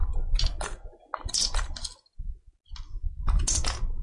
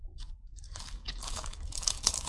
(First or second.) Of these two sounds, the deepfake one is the second